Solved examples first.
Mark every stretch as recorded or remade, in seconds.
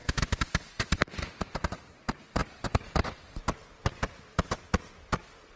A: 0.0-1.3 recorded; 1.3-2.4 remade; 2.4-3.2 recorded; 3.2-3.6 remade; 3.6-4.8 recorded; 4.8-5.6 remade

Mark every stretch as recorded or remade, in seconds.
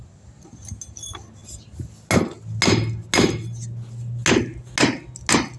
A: 0.0-5.6 recorded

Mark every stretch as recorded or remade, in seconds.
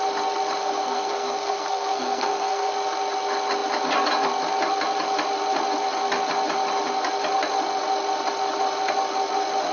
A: 0.0-0.6 recorded; 0.6-2.7 remade; 2.7-9.7 recorded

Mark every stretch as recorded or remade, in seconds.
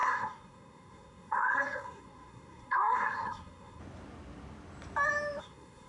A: 0.0-3.8 remade; 3.8-5.4 recorded; 5.4-5.9 remade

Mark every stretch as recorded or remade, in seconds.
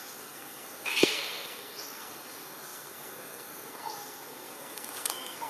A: 0.0-5.5 remade